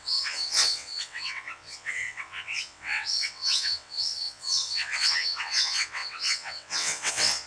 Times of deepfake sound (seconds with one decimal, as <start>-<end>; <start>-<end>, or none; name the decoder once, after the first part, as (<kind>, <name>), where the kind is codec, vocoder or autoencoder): 0.0-7.5 (vocoder, WaveNeXt)